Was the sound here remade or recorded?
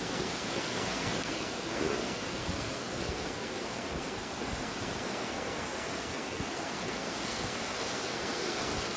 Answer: remade